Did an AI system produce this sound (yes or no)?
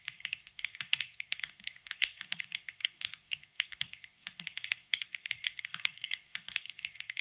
yes